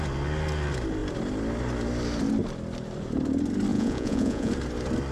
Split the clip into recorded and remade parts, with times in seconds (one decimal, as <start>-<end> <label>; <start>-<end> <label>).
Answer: 0.0-3.7 recorded; 3.7-4.5 remade; 4.5-5.1 recorded

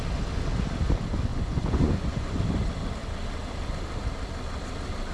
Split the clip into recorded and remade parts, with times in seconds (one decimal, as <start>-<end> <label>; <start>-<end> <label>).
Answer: 0.0-1.3 recorded; 1.3-2.4 remade; 2.4-5.1 recorded

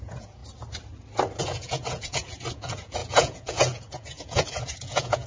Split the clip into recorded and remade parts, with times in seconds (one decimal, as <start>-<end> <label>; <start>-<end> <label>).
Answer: 0.0-0.4 remade; 0.4-1.4 recorded; 1.4-5.3 remade

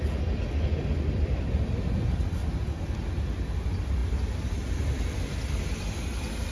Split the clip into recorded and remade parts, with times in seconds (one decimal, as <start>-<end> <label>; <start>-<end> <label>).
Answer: 0.0-6.5 recorded

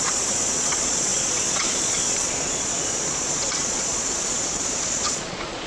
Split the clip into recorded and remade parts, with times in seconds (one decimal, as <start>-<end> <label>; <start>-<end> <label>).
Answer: 0.0-5.7 remade